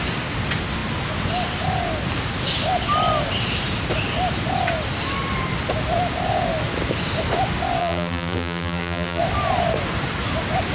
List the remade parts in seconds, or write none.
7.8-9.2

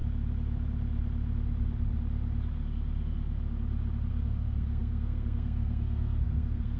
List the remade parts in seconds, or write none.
4.1-6.8

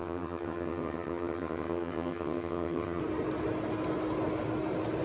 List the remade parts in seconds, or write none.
0.0-3.0

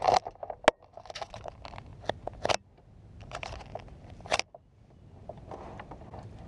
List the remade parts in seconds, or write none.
none

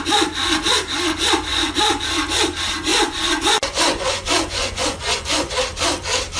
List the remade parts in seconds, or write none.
1.5-2.0; 2.9-5.5

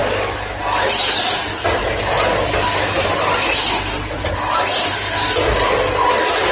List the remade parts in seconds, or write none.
1.8-3.1; 4.7-5.3